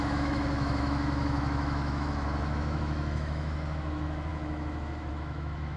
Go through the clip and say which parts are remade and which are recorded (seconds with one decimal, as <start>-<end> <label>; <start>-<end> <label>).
0.0-5.8 remade